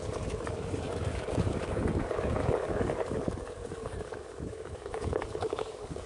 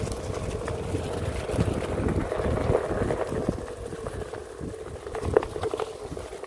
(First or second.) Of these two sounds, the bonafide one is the second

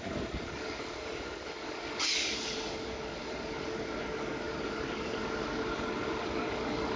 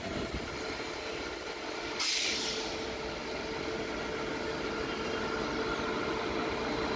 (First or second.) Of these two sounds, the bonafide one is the second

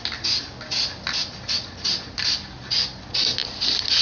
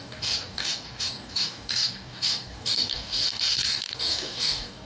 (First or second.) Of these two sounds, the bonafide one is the first